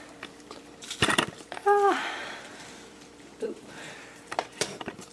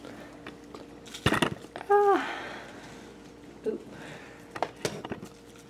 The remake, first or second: first